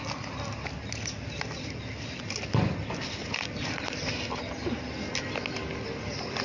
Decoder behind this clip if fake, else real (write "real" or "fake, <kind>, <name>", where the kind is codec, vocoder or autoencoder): real